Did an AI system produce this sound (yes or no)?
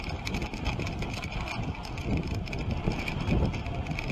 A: no